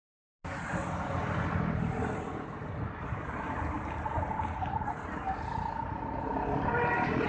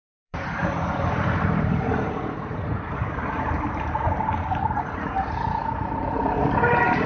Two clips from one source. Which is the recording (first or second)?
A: first